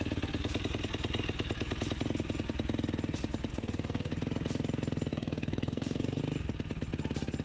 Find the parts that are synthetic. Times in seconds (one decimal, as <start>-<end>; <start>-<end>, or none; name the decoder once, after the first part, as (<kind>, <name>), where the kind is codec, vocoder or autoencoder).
3.5-4.1 (codec, SNAC); 5.1-6.2